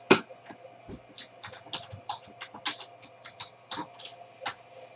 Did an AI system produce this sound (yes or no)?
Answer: no